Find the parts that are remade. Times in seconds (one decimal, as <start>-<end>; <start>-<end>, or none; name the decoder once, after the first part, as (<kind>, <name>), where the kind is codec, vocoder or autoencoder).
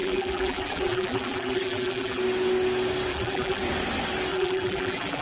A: 0.0-2.2 (vocoder, BigVGAN v2); 3.1-3.6; 4.3-5.2